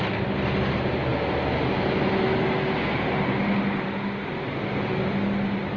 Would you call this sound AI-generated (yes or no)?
no